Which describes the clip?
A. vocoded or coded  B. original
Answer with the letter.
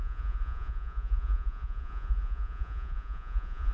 A